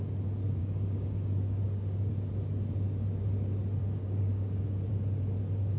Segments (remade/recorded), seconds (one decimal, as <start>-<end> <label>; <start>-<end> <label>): 0.0-0.6 recorded; 0.6-2.1 remade; 2.1-3.8 recorded; 3.8-4.9 remade; 4.9-5.8 recorded